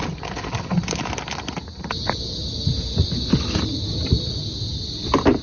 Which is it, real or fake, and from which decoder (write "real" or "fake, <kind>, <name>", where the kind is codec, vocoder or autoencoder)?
real